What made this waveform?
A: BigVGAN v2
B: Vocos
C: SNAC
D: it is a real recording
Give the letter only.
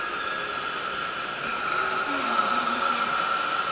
D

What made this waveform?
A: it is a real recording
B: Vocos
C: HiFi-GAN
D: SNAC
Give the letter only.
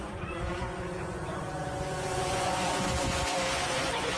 B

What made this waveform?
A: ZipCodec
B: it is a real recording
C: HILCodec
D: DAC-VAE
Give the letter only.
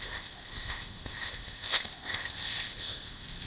A